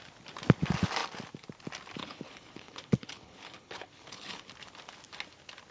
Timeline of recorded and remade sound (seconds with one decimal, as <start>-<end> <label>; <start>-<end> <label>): 0.0-2.0 recorded; 2.0-4.5 remade; 4.5-5.7 recorded